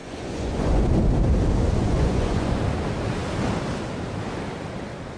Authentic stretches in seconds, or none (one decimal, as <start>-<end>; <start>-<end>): 0.9-1.8; 2.6-5.2